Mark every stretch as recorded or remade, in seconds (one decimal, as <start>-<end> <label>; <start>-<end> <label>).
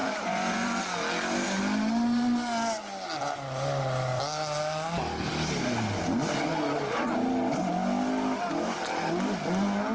0.0-0.8 remade; 0.8-9.9 recorded